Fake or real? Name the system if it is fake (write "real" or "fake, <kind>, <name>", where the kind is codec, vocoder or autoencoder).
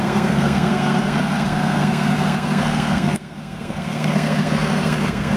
fake, codec, SNAC